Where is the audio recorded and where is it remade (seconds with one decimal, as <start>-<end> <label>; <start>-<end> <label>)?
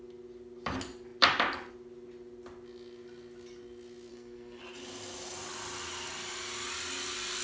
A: 0.0-4.1 recorded; 4.1-4.6 remade; 4.6-7.4 recorded